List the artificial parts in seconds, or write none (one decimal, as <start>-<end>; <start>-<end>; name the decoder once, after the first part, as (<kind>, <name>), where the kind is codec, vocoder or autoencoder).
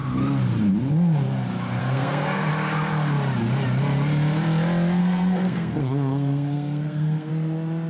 1.8-2.5 (codec, SNAC); 5.0-7.3